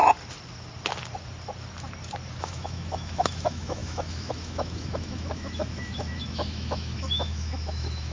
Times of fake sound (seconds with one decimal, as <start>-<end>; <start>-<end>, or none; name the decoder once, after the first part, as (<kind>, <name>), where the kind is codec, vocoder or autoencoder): 2.4-8.1 (autoencoder, DAC-VAE)